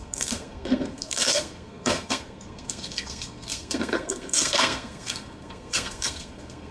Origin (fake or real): fake